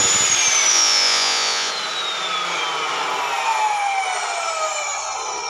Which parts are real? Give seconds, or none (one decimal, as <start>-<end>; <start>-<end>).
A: 0.0-0.7; 1.7-5.5